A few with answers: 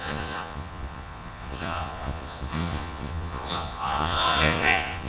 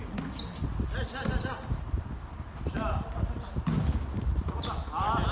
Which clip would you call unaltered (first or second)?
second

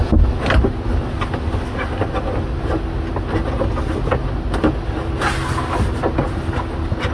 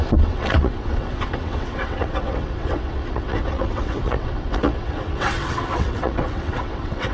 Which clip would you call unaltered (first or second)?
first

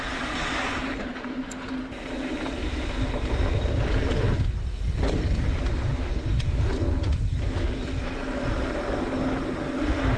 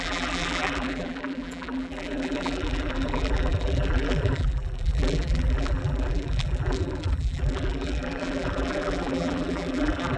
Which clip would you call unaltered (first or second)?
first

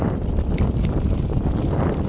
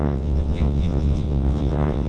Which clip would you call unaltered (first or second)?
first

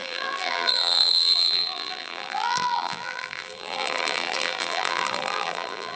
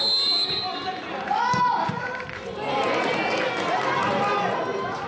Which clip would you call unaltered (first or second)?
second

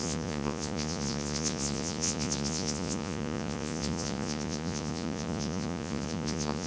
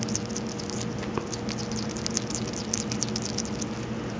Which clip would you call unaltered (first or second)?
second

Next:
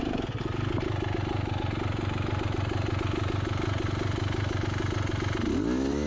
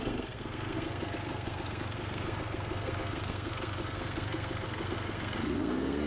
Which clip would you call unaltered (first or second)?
first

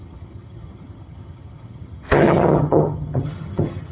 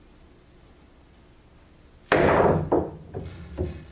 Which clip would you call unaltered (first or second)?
second